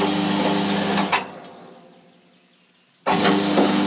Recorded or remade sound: recorded